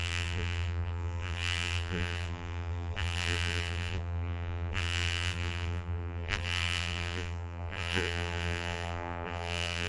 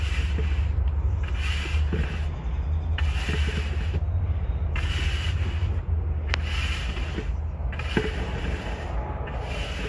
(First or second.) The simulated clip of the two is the first